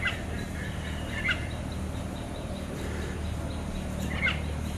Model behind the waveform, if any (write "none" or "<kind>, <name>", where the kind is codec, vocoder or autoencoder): none